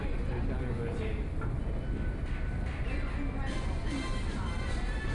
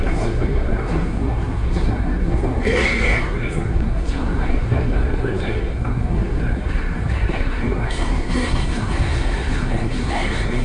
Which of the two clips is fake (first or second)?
second